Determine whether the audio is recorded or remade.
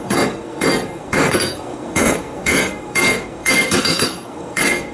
remade